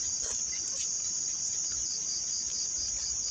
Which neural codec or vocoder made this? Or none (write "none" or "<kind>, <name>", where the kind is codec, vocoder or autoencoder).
none